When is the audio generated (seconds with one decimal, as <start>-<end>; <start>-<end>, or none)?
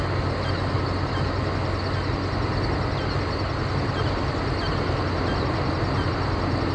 none